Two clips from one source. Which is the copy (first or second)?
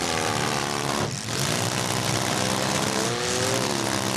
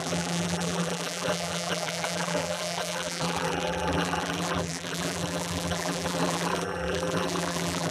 second